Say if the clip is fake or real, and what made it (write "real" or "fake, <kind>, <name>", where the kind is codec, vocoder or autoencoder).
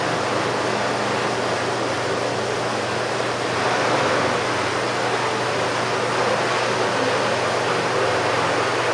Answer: real